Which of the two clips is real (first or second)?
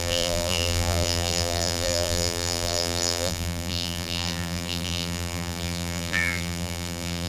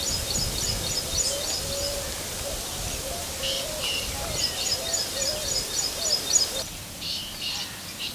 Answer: second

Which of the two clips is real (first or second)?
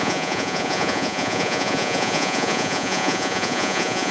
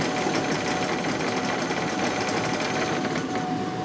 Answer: second